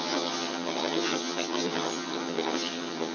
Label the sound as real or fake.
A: fake